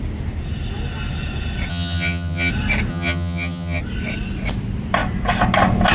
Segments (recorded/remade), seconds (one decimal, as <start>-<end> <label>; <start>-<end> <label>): 0.0-1.7 recorded; 1.7-2.5 remade; 2.5-2.9 recorded; 2.9-3.8 remade; 3.8-5.9 recorded